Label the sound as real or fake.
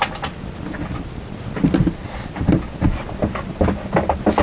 real